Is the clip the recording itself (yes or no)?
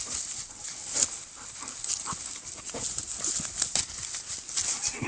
yes